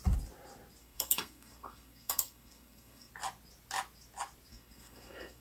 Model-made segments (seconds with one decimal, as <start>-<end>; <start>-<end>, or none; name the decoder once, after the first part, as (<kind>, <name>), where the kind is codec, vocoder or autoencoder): 0.8-3.1 (codec, SNAC); 4.5-5.4